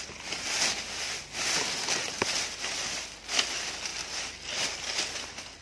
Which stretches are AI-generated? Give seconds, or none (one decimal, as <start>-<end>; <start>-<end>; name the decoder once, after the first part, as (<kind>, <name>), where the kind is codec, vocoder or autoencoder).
none